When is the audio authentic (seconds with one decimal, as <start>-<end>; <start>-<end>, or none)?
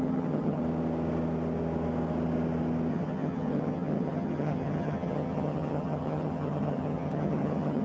0.6-2.9